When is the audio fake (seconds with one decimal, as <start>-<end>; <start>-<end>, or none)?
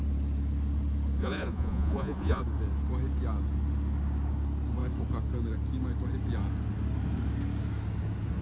1.2-2.4